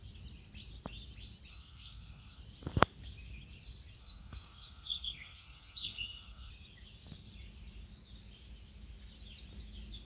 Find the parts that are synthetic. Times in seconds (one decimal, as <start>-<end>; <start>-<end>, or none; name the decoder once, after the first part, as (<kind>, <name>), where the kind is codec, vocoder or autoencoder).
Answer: 1.5-2.4 (codec, SNAC); 4.0-6.5